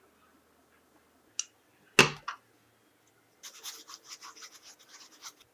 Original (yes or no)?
yes